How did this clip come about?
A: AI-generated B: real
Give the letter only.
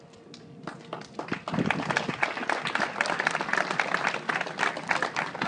B